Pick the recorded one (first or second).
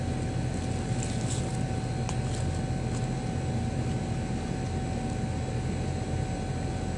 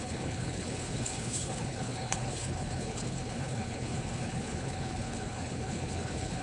first